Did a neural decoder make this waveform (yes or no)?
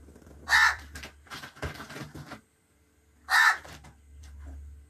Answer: no